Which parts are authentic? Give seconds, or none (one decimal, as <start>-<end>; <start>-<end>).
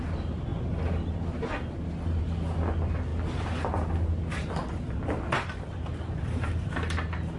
0.0-7.4